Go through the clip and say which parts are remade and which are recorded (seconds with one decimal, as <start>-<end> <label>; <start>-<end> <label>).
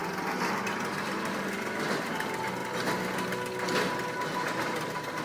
0.0-5.2 recorded